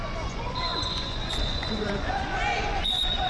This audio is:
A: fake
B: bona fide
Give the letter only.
A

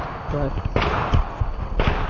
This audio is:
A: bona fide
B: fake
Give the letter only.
A